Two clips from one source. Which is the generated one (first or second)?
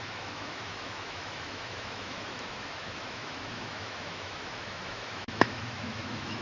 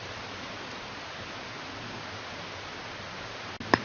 first